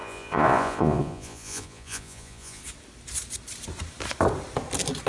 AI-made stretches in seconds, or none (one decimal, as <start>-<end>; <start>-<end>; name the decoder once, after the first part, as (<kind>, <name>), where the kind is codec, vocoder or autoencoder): 0.0-2.6 (vocoder, Vocos)